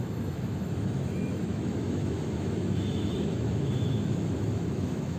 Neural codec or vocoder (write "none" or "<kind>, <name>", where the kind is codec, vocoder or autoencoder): autoencoder, DAC-VAE